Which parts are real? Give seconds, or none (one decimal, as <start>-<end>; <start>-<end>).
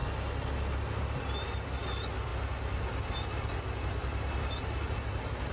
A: 0.0-5.5